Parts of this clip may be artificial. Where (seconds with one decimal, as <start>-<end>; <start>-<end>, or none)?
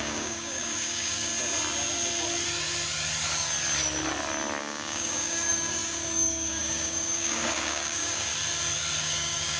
0.0-1.3; 4.6-8.3; 9.0-9.6